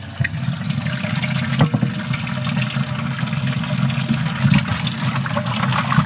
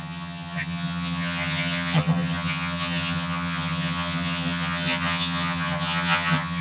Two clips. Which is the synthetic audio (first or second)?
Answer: second